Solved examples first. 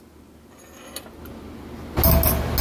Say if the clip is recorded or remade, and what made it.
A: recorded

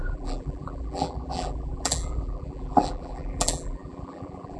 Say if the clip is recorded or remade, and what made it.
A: remade, vocoder, BigVGAN v2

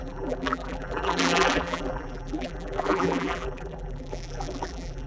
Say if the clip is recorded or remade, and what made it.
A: remade, vocoder, BigVGAN v2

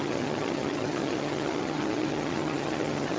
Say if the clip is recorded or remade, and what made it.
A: remade, vocoder, HiFi-GAN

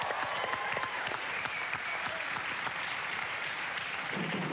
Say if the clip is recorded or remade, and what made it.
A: remade, vocoder, BigVGAN v2